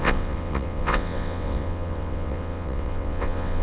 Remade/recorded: remade